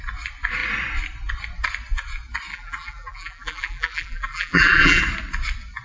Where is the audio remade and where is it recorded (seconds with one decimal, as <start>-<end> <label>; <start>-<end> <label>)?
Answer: 0.0-2.5 recorded; 2.5-5.0 remade; 5.0-5.8 recorded